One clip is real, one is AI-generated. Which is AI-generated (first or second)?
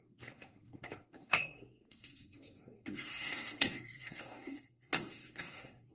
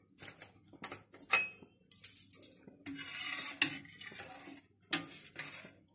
first